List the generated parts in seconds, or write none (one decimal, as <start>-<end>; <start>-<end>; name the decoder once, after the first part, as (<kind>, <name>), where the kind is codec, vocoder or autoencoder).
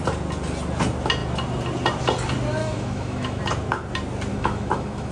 2.6-3.4 (autoencoder, DAC-VAE); 4.3-5.1